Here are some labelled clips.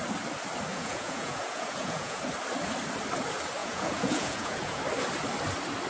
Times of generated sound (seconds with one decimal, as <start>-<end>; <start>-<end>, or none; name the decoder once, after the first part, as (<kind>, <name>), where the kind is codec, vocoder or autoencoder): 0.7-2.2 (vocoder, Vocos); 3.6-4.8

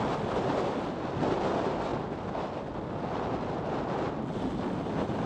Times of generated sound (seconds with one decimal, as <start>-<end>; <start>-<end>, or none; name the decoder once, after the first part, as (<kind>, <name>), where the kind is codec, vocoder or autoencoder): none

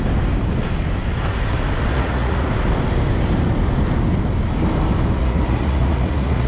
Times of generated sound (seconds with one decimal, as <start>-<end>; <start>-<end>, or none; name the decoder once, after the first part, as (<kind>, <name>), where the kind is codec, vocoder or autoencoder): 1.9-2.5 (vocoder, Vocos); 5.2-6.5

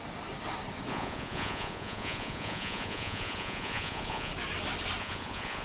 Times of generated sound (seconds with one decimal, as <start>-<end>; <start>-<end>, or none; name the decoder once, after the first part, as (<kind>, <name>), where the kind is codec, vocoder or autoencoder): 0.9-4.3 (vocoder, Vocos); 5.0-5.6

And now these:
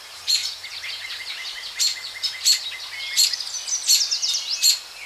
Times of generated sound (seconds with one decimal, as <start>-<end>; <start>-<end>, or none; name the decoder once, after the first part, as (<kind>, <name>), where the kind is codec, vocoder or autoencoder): 0.4-1.1 (vocoder, Vocos)

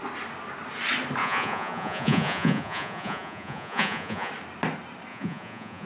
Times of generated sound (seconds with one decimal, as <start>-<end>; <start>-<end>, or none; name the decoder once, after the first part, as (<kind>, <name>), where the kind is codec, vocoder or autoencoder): 1.2-4.3 (vocoder, Vocos); 5.1-5.9

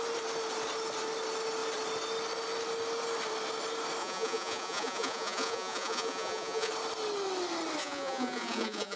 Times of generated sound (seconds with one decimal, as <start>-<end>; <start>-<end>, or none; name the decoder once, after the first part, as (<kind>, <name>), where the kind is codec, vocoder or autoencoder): 4.0-6.7 (vocoder, Vocos); 7.8-9.0

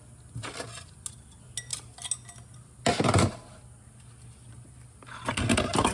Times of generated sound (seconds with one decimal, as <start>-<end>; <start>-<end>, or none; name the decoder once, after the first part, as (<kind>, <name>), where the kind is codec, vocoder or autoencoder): none